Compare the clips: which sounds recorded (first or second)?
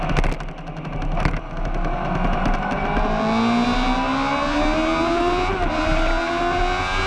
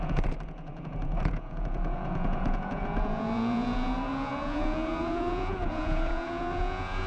first